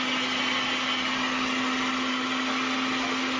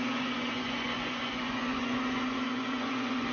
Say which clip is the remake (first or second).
second